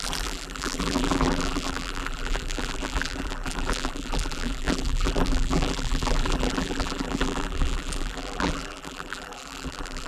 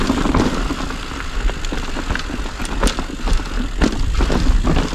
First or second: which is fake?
first